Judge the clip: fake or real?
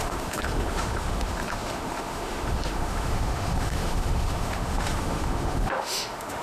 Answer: fake